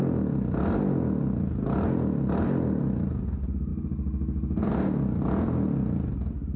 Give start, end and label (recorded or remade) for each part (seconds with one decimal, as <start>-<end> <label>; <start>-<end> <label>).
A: 0.0-6.6 recorded